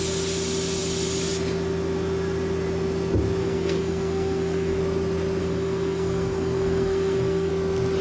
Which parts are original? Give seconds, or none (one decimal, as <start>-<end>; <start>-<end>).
0.0-3.4; 4.8-5.4; 7.5-8.0